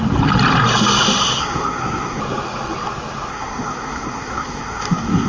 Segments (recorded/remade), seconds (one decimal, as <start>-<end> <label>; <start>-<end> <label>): 0.0-1.4 recorded; 1.4-2.2 remade; 2.2-3.3 recorded; 3.3-5.3 remade